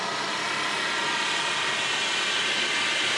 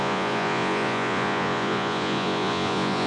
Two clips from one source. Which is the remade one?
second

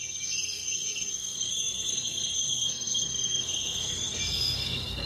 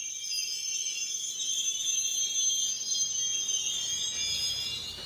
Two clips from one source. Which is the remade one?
first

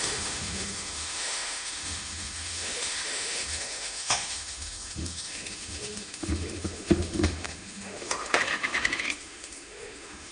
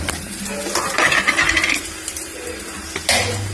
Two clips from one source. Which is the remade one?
first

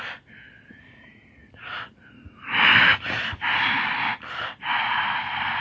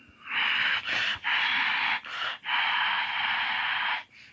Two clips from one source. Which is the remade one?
second